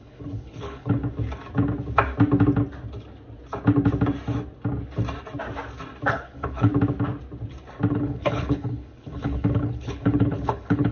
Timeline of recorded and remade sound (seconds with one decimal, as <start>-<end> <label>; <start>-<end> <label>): 0.0-1.0 remade; 1.0-6.1 recorded; 6.1-6.7 remade; 6.7-7.9 recorded; 7.9-10.9 remade